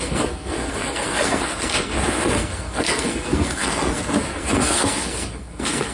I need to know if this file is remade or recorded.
remade